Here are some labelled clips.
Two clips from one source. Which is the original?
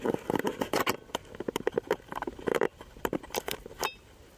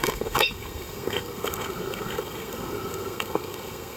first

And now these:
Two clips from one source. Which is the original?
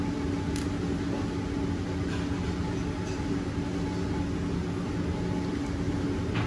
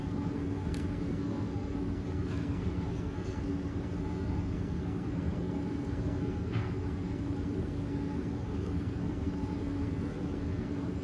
first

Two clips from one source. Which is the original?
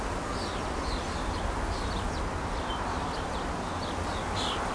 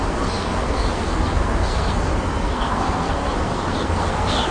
first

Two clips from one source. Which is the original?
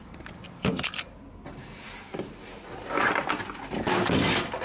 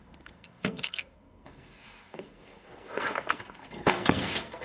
first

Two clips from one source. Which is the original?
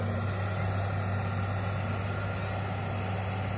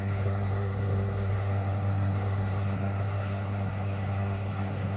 first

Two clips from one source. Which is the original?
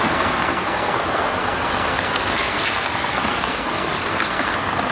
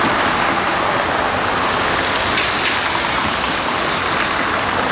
second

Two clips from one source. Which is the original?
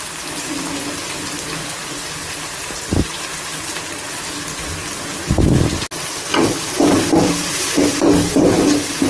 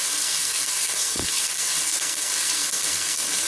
first